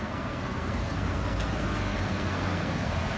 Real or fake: fake